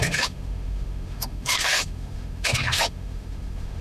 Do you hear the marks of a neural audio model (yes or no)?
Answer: yes